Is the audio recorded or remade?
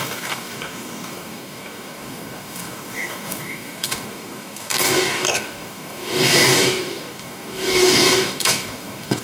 remade